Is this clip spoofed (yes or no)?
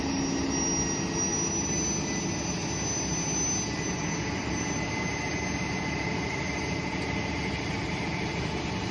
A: no